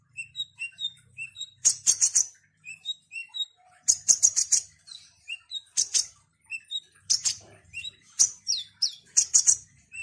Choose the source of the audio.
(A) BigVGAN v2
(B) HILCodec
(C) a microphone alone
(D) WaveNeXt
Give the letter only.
A